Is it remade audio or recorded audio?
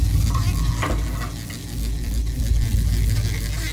recorded